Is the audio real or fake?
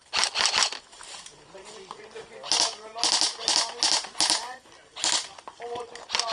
real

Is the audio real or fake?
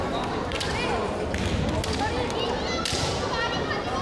real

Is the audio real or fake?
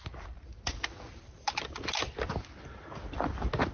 real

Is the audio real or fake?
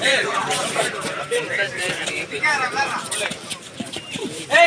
fake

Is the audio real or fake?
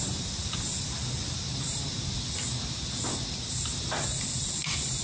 real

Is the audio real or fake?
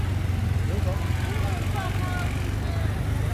real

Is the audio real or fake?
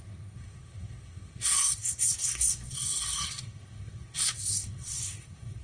fake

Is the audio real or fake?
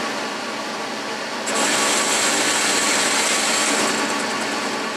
real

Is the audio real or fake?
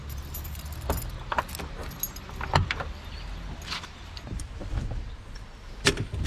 real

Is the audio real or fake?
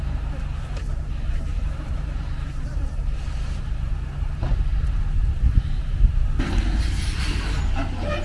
fake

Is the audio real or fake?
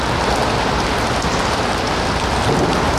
real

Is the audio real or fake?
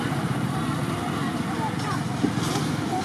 real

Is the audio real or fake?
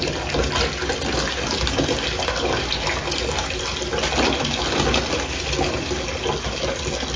real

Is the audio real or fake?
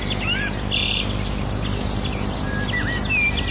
real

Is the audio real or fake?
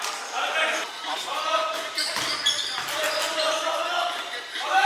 real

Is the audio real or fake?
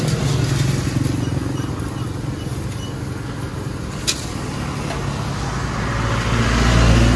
real